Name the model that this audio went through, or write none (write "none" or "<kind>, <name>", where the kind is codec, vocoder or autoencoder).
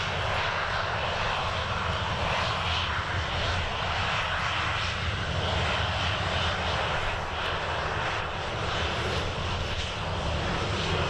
none